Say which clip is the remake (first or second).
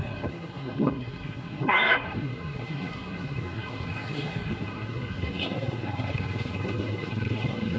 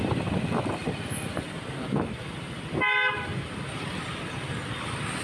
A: first